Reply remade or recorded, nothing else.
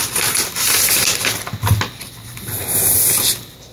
recorded